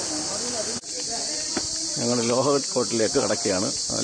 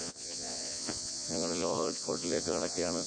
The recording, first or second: first